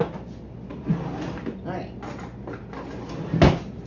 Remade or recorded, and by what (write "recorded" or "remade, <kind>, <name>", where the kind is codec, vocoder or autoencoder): recorded